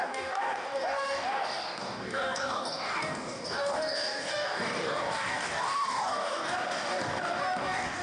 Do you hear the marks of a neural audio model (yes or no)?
yes